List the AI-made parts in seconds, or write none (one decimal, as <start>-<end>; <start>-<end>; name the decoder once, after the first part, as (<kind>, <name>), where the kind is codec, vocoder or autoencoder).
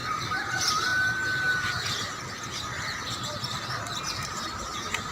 0.5-0.9 (vocoder, BigVGAN v2); 4.0-5.1